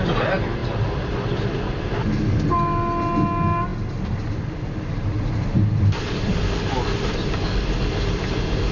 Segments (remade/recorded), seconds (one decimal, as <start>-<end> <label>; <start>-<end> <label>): 0.0-8.7 recorded